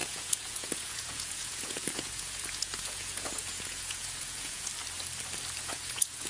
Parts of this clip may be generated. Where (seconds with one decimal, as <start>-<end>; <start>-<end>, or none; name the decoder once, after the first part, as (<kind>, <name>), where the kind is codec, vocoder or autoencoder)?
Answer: 0.0-4.7 (vocoder, Vocos); 5.6-6.3